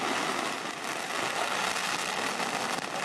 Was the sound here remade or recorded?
recorded